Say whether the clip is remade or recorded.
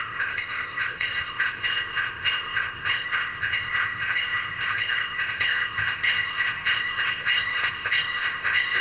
remade